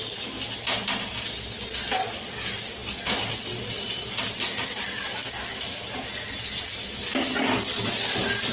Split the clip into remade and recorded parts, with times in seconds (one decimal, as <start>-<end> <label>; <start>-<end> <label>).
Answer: 0.0-8.5 recorded